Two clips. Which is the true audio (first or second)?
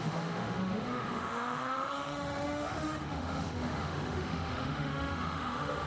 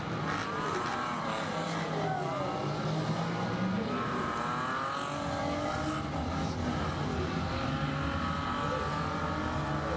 second